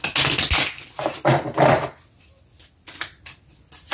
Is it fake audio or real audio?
real